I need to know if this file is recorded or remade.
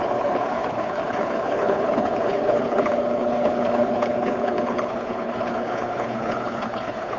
remade